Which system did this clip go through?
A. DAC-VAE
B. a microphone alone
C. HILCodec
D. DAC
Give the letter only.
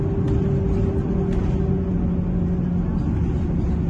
B